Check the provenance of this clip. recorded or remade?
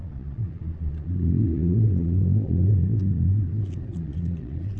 remade